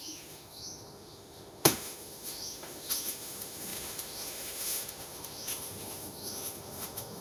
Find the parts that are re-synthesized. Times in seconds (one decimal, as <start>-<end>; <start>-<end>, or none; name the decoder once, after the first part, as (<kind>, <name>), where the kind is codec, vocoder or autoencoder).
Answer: 0.0-7.2 (autoencoder, DAC-VAE)